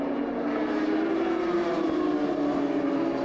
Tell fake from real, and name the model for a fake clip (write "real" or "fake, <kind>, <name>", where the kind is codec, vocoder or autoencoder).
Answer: real